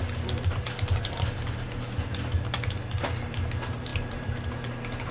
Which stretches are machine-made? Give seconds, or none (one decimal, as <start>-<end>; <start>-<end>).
3.9-4.5